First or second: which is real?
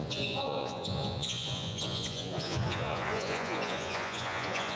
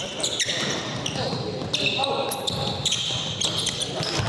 second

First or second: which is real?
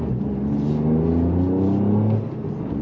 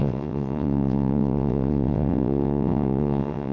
first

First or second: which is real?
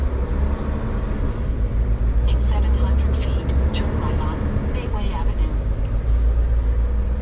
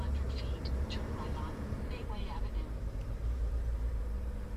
first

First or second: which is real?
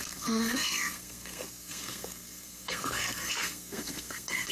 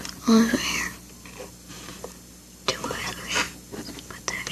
second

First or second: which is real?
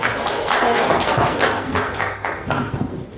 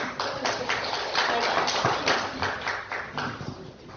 second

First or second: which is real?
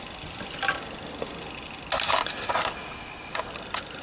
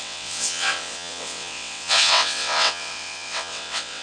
first